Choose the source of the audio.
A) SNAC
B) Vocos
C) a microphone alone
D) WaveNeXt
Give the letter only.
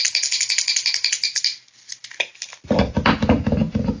C